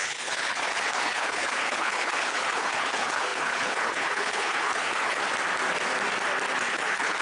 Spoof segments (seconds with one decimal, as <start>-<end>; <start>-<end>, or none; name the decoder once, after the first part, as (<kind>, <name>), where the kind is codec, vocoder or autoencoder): 0.0-5.2 (codec, HILCodec); 6.7-7.2